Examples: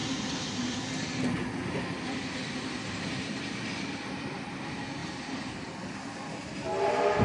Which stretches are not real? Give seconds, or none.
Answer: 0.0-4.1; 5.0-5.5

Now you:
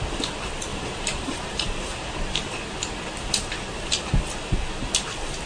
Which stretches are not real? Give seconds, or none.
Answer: 0.7-2.2

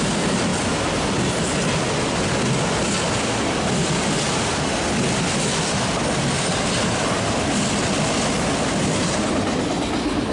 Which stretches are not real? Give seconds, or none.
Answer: none

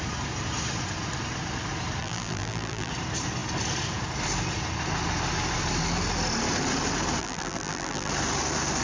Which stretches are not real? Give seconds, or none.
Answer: 2.0-2.9; 7.2-8.1

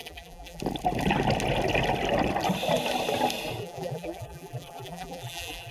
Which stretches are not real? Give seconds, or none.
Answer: 0.0-0.6; 3.6-5.7

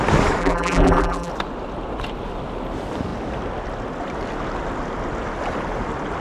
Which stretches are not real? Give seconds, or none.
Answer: 0.4-1.3

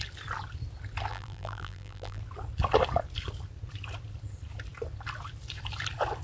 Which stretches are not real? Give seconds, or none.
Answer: 1.1-2.2